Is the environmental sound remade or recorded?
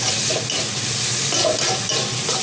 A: recorded